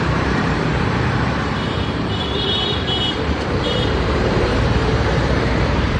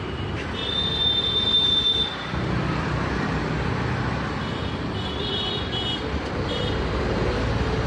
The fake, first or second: first